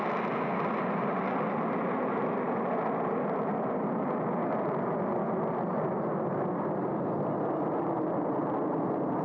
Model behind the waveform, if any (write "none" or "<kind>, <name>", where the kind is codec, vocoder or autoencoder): none